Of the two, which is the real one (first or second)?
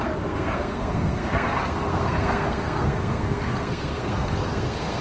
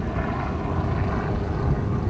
second